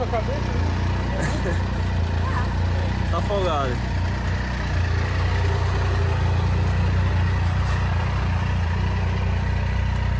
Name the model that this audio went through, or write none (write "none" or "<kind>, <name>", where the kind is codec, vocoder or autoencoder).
none